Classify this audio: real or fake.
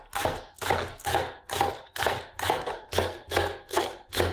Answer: fake